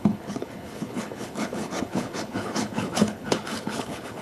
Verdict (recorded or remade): remade